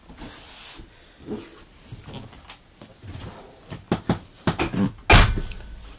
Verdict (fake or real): real